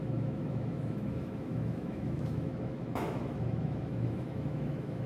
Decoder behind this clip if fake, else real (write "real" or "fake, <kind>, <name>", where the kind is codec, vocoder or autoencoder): fake, autoencoder, DAC-VAE